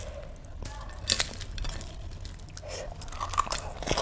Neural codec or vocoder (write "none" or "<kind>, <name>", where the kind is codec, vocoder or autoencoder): none